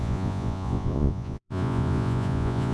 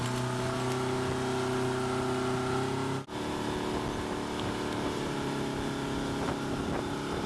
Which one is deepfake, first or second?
first